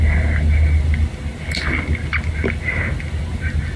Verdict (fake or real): real